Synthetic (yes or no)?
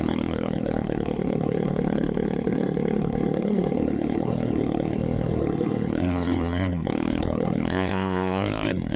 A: yes